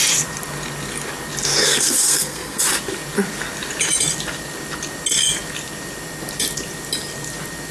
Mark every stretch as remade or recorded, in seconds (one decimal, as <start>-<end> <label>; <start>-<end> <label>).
0.0-1.6 recorded; 1.6-2.6 remade; 2.6-7.7 recorded